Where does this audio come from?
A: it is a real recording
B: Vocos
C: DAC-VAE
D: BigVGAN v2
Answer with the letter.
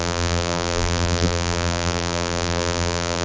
D